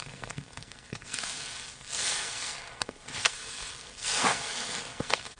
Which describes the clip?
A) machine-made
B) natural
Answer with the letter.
A